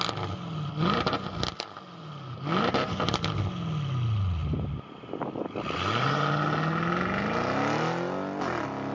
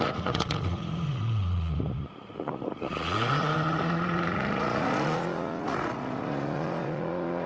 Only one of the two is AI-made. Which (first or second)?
second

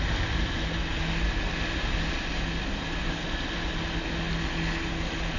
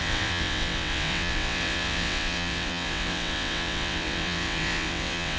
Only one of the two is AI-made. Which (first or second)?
second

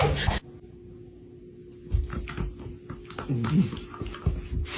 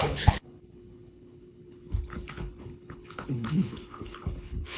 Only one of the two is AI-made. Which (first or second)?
second